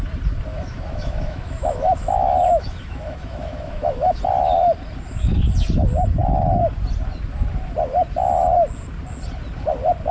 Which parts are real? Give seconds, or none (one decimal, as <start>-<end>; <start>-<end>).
0.0-0.5; 4.2-10.1